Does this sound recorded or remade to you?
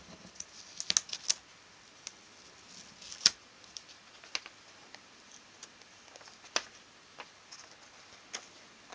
recorded